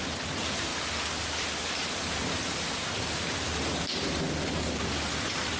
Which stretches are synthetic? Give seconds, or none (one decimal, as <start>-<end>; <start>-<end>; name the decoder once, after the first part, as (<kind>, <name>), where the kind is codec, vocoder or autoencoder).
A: none